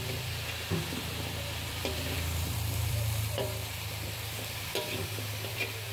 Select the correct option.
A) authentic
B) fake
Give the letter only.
B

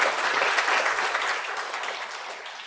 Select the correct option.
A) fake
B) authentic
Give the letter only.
B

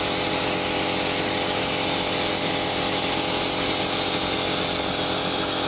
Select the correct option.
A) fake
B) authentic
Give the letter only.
B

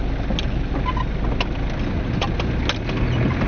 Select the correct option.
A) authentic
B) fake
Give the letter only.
A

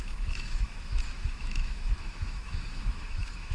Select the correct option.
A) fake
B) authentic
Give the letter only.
A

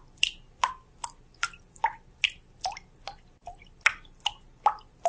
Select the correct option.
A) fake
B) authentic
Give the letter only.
B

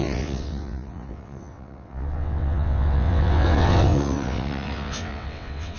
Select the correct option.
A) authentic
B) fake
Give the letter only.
B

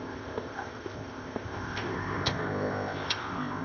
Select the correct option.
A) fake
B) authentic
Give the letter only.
A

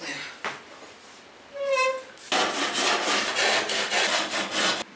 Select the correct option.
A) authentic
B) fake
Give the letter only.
A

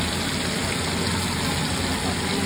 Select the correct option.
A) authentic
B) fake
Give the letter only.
A